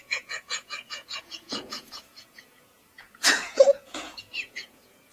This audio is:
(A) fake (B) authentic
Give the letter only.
A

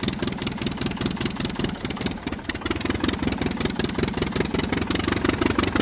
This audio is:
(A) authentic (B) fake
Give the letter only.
A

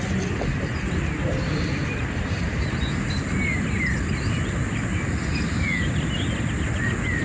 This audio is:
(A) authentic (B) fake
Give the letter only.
A